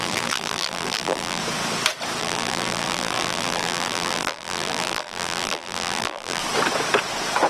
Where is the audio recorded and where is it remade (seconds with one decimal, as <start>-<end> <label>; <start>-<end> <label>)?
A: 0.0-1.4 remade; 1.4-2.2 recorded; 2.2-6.4 remade; 6.4-7.5 recorded